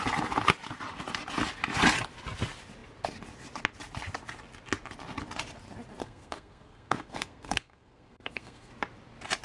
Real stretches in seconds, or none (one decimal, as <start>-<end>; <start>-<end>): 0.0-6.0; 8.7-9.4